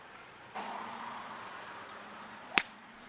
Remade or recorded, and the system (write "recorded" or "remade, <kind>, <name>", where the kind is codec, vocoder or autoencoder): remade, vocoder, Vocos